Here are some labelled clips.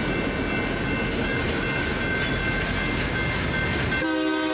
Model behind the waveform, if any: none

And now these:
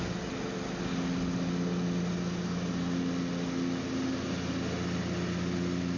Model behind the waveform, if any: none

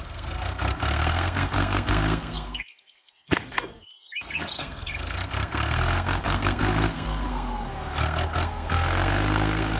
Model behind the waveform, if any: codec, SNAC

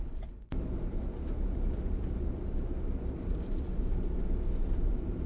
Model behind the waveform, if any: vocoder, BigVGAN v2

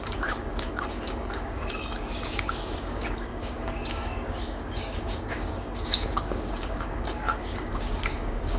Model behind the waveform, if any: codec, DAC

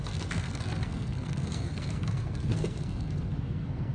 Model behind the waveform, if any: codec, SNAC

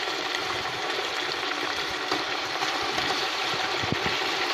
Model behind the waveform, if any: vocoder, BigVGAN v2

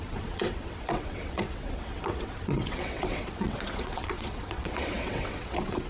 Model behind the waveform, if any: vocoder, WaveNeXt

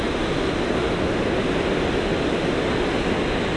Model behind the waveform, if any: none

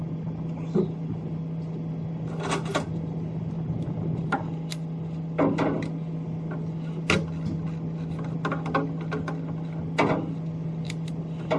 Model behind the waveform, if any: none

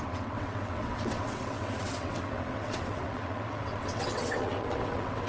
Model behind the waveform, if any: vocoder, WaveNeXt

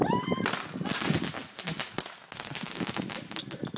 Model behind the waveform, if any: none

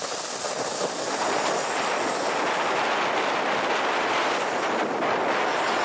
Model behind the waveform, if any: none